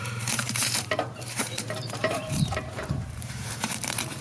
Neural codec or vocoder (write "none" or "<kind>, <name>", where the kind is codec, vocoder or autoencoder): vocoder, BigVGAN v2